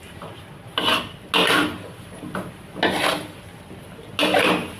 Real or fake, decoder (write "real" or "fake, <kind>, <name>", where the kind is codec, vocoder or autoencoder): real